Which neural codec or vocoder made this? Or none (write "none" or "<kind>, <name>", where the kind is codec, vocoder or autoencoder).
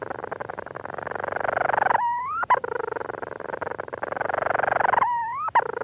none